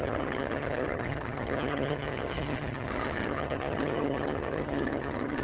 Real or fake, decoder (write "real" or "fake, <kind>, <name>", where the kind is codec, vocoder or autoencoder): fake, vocoder, HiFi-GAN